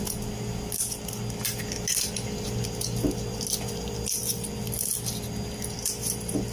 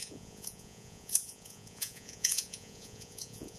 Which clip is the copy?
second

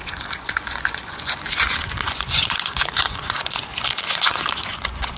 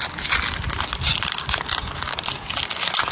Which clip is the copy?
first